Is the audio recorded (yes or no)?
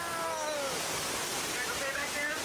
yes